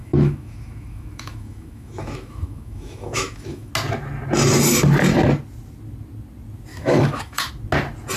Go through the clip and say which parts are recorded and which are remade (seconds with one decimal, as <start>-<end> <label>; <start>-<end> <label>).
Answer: 0.0-3.7 remade; 3.7-6.7 recorded; 6.7-7.5 remade; 7.5-8.2 recorded